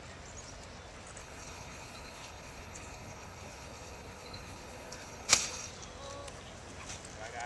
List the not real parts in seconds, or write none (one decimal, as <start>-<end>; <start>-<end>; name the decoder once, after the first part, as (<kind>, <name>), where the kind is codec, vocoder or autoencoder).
1.2-5.7 (codec, HILCodec)